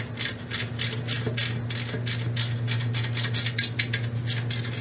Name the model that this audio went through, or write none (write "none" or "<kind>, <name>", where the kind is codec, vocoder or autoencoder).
none